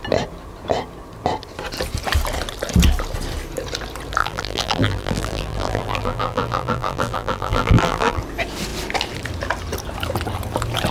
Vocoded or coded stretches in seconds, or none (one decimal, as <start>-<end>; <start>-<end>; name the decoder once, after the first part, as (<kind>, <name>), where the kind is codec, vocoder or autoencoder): 4.2-8.2 (vocoder, BigVGAN v2)